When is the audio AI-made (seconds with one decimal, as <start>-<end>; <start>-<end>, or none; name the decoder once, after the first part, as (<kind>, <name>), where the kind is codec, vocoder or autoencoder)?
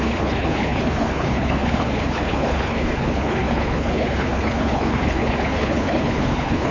0.0-6.7 (codec, HILCodec)